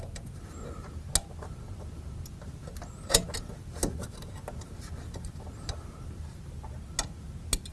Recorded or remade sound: recorded